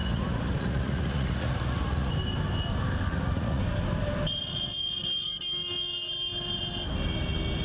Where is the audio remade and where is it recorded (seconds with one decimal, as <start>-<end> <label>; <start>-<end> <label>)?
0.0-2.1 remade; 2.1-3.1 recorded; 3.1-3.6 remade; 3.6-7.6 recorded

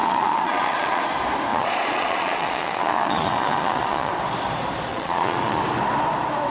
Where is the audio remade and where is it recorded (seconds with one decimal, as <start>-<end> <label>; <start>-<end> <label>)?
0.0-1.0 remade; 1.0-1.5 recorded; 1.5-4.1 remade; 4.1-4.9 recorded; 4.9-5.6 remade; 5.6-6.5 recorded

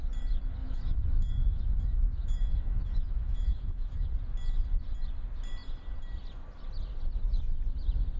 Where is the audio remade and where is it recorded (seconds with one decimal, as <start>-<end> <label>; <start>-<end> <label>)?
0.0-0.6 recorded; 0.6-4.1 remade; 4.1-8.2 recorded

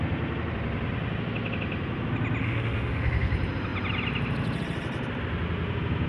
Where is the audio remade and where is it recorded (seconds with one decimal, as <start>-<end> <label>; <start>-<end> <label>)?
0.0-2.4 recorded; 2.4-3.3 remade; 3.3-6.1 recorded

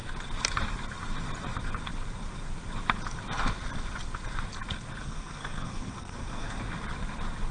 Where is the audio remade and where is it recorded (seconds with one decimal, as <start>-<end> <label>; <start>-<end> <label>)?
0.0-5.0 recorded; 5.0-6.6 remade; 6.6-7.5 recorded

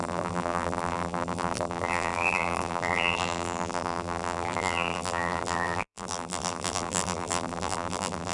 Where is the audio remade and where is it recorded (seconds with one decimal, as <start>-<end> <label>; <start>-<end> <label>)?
0.0-8.3 remade